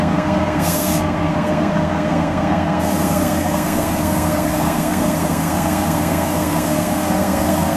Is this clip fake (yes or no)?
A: yes